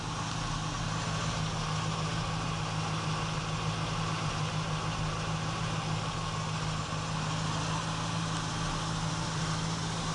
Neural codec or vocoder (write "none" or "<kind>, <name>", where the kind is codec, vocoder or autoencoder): none